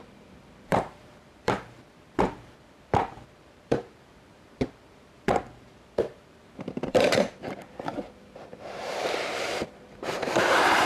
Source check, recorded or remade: remade